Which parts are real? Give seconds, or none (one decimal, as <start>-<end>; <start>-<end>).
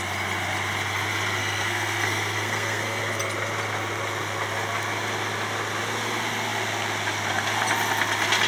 0.0-1.4; 3.0-8.5